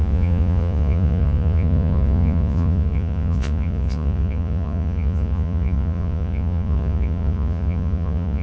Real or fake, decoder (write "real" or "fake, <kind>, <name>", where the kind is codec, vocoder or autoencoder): fake, vocoder, Vocos